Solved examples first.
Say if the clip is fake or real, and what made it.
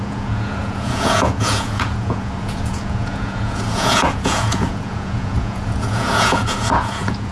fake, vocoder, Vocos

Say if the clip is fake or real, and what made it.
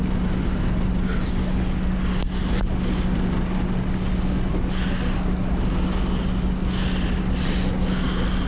real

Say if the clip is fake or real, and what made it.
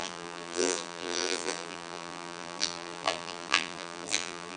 fake, vocoder, BigVGAN v2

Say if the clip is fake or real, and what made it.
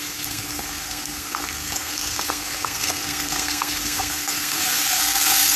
fake, codec, SNAC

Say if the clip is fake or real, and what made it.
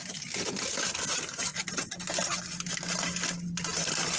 fake, vocoder, BigVGAN v2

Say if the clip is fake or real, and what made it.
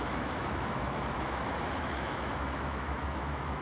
fake, autoencoder, DAC-VAE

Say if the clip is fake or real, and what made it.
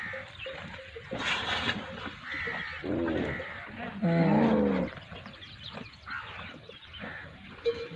real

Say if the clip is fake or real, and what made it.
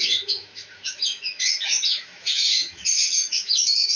fake, autoencoder, DAC-VAE